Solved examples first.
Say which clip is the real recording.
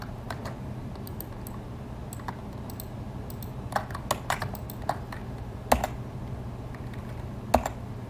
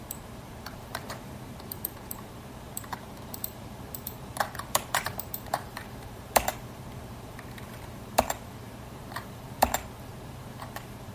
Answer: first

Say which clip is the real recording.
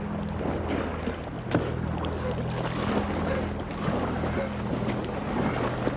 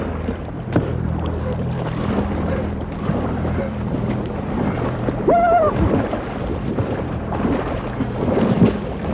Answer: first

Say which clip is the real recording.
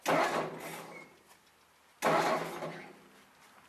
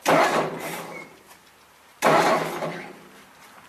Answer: first